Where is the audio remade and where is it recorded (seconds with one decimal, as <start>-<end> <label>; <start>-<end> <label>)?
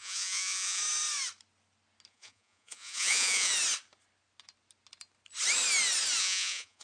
0.0-0.8 remade; 0.8-2.1 recorded; 2.1-3.5 remade; 3.5-6.2 recorded; 6.2-6.8 remade